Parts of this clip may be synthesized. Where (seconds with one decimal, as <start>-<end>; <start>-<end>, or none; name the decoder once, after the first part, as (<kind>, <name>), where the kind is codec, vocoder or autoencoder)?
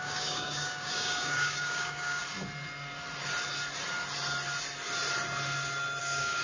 0.0-2.2 (codec, DAC); 6.0-6.4